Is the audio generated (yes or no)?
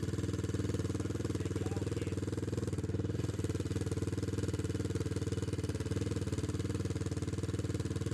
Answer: no